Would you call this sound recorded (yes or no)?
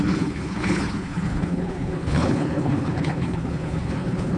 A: no